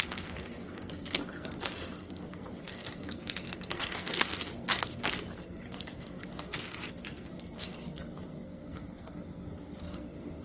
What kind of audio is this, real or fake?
fake